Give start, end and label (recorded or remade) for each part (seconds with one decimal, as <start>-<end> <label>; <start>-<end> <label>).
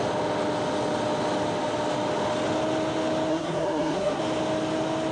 0.0-3.3 recorded; 3.3-4.2 remade; 4.2-5.1 recorded